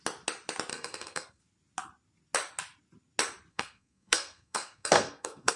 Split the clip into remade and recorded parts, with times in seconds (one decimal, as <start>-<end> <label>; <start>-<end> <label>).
0.0-0.7 recorded; 0.7-1.4 remade; 1.4-3.5 recorded; 3.5-5.6 remade